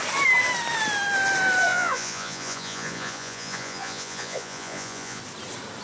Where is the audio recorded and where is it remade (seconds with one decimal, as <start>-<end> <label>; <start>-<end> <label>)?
0.0-1.7 recorded; 1.7-5.2 remade; 5.2-5.8 recorded